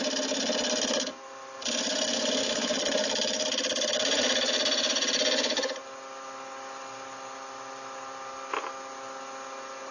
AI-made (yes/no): no